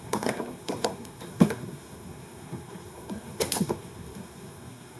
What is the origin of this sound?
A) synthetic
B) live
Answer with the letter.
A